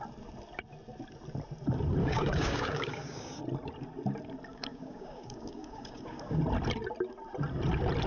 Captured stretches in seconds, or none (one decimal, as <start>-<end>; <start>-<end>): 0.0-2.0; 3.4-4.5; 6.4-8.1